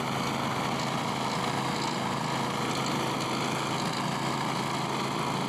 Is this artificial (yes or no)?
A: no